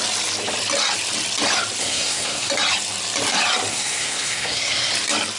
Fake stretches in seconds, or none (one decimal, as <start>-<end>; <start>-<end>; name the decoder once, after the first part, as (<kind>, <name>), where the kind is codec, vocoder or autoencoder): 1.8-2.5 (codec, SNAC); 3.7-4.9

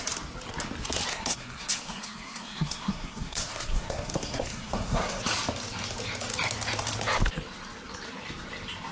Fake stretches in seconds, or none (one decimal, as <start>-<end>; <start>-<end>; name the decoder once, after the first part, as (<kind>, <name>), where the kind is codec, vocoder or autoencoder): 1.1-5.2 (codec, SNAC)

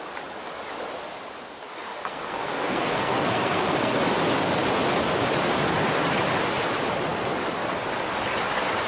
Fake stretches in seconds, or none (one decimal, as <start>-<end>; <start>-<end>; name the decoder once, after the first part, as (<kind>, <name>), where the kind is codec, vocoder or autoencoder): 1.9-4.0 (codec, SNAC)

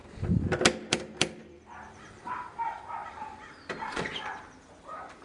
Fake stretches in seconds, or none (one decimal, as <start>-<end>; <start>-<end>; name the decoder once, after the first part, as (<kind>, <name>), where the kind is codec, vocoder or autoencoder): 0.9-5.2 (vocoder, BigVGAN v2)

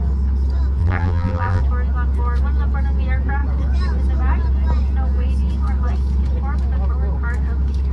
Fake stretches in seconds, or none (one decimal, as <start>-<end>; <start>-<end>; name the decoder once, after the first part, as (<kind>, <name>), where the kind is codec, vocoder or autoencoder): 0.8-1.6 (vocoder, BigVGAN v2)

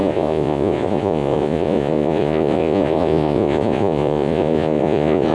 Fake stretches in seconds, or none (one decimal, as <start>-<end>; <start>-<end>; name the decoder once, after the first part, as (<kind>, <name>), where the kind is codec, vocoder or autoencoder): 0.0-5.3 (vocoder, Vocos)

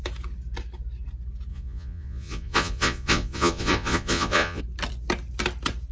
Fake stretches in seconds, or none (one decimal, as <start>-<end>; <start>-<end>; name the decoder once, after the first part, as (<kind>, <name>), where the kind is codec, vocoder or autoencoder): 1.5-4.6 (vocoder, Vocos)